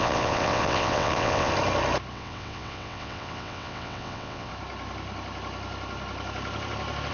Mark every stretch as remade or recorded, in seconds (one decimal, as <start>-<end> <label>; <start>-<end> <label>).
0.0-1.5 remade; 1.5-2.1 recorded; 2.1-4.5 remade; 4.5-7.1 recorded